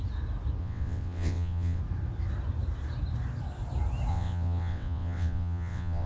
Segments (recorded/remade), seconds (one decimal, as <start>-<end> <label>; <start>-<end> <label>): 0.0-0.6 recorded; 0.6-1.8 remade; 1.8-4.1 recorded; 4.1-6.1 remade